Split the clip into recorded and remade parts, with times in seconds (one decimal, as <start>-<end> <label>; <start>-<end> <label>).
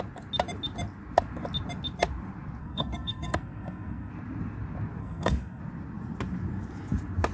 0.0-2.6 recorded; 2.6-4.1 remade; 4.1-5.0 recorded; 5.0-5.6 remade; 5.6-7.3 recorded